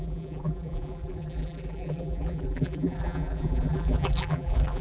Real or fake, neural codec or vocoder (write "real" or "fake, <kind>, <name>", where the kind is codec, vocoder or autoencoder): fake, vocoder, BigVGAN v2